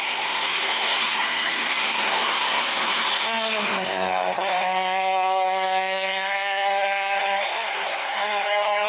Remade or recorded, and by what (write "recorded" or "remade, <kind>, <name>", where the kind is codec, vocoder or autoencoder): remade, codec, SNAC